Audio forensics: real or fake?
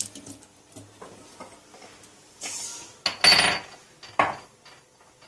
real